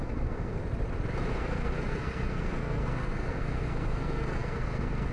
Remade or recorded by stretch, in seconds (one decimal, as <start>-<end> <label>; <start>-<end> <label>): 0.0-0.6 remade; 0.6-1.3 recorded; 1.3-5.1 remade